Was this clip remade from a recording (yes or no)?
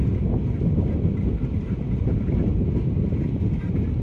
no